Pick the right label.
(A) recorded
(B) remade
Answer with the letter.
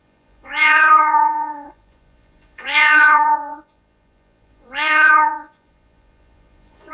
B